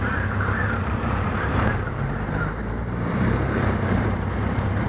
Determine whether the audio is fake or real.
fake